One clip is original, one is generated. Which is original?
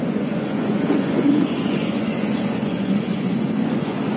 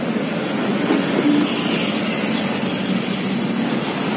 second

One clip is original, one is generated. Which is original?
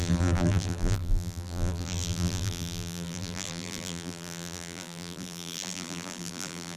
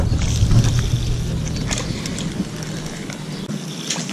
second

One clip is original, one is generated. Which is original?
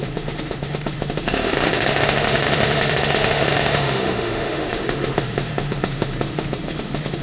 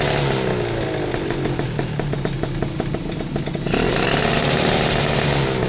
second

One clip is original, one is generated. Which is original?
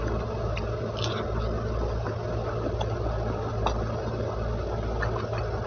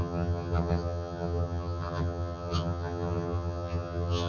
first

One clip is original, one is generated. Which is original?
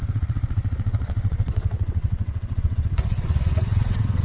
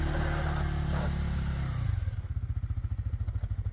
second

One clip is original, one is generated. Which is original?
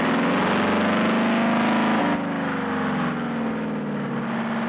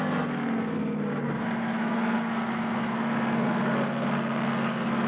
first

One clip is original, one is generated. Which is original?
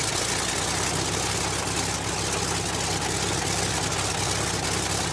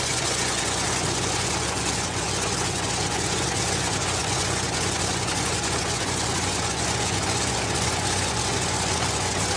first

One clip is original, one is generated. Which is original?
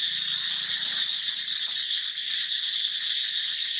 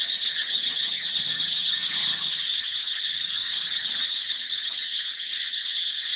first